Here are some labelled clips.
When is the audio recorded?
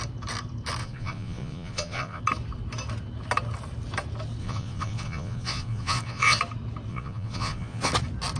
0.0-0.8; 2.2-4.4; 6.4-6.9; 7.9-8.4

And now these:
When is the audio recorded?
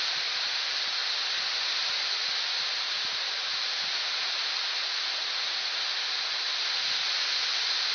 0.0-7.9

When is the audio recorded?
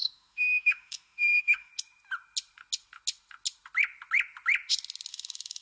1.7-5.1